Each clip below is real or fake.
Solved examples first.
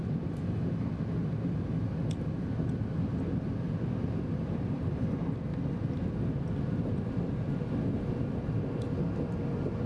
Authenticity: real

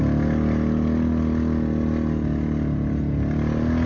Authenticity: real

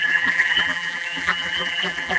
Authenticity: fake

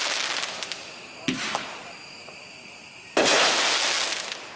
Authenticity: real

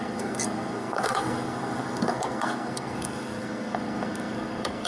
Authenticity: fake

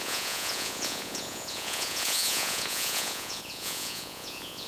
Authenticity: fake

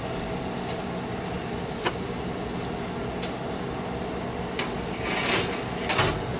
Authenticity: real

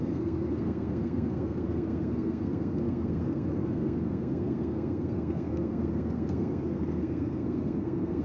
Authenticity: fake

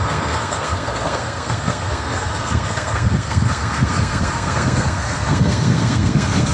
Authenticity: fake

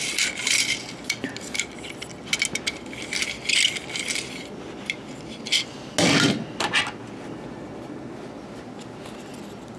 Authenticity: real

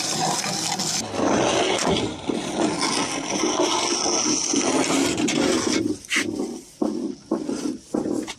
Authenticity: real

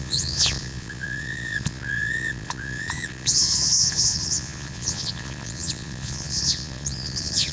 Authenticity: fake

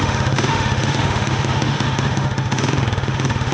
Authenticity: fake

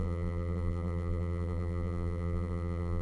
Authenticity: fake